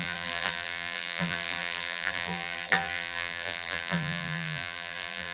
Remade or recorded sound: remade